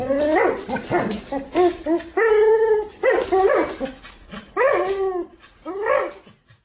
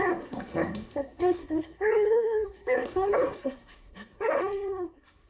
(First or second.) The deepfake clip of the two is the second